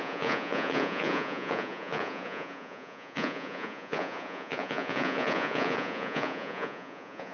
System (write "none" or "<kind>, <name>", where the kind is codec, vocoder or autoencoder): vocoder, Vocos